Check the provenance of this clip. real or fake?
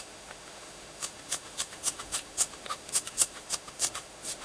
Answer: fake